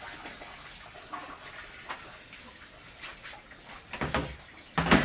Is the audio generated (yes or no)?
no